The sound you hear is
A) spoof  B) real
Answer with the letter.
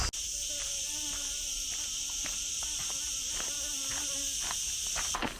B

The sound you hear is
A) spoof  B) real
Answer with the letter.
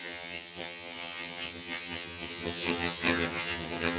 A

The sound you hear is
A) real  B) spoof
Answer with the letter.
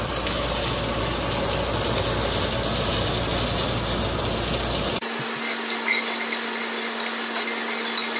A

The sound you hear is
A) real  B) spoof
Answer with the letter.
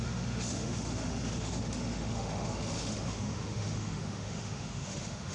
B